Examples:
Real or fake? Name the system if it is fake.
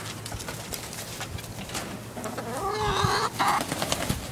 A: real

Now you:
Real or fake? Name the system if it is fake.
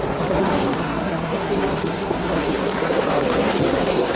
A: fake, codec, SNAC